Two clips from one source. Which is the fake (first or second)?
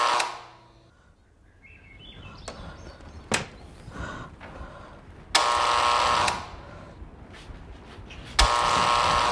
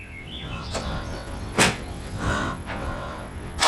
second